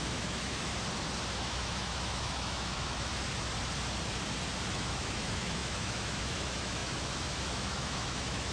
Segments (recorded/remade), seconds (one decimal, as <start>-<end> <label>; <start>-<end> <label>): 0.0-0.7 remade; 0.7-1.4 recorded; 1.4-3.1 remade; 3.1-4.7 recorded; 4.7-8.5 remade